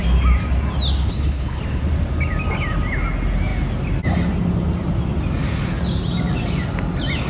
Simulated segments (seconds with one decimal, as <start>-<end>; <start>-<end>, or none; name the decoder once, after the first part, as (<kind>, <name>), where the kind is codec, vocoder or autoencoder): 1.0-1.6 (codec, HILCodec)